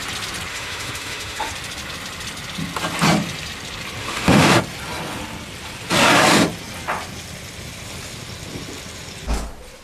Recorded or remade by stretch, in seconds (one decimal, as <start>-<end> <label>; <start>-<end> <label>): 0.0-0.5 recorded; 0.5-1.5 remade; 1.5-4.0 recorded; 4.0-4.6 remade; 4.6-9.8 recorded